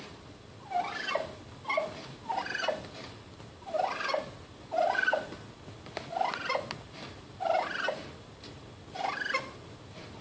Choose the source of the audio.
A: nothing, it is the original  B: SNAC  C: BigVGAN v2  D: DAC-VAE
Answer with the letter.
A